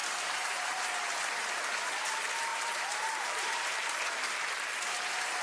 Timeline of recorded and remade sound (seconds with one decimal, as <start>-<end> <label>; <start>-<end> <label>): 0.0-1.6 remade; 1.6-2.5 recorded; 2.5-3.6 remade; 3.6-5.4 recorded